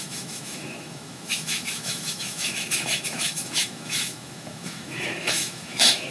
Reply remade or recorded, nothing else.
remade